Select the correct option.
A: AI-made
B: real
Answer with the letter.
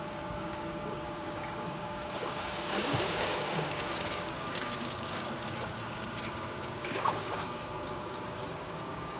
A